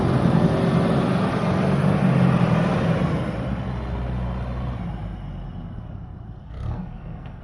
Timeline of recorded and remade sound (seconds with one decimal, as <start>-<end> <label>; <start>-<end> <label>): 0.0-6.4 recorded; 6.4-7.4 remade